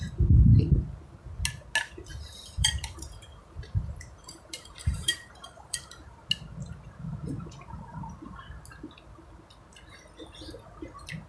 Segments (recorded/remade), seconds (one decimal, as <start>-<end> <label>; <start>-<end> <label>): 0.0-2.1 recorded; 2.1-6.1 remade; 6.1-11.3 recorded

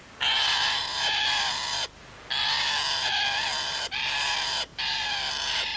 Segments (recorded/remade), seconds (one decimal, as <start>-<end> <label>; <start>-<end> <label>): 0.0-5.8 recorded